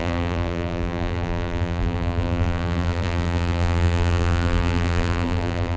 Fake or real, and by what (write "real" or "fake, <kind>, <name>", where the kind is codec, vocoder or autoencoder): fake, vocoder, BigVGAN v2